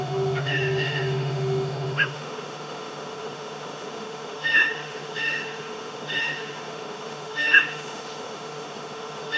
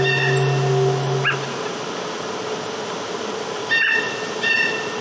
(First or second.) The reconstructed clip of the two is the first